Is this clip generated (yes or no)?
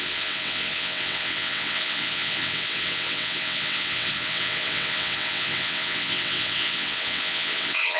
yes